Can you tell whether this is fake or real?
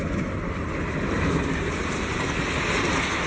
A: real